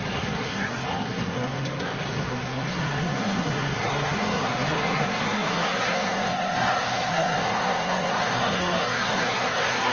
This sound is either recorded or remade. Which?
remade